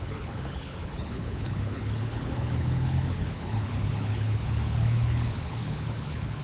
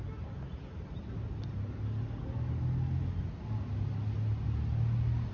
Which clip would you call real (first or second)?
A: second